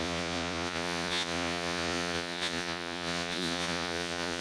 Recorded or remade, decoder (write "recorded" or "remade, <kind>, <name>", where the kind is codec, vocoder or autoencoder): remade, vocoder, Vocos